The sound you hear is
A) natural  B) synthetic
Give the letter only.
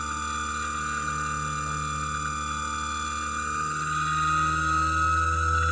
A